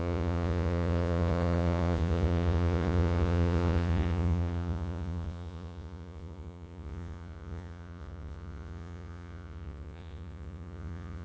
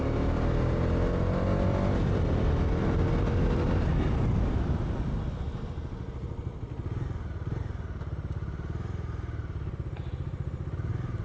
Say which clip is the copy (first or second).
first